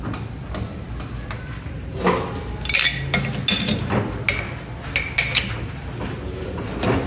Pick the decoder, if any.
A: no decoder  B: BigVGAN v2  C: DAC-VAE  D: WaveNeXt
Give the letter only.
A